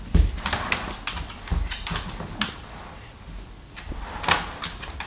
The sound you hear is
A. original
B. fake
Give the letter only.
A